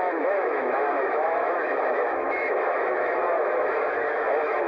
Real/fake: fake